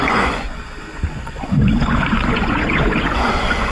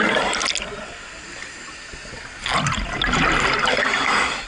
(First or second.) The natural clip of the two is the second